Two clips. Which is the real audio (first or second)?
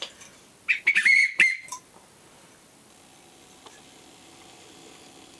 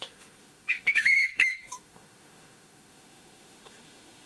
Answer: first